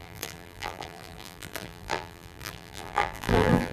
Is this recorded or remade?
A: remade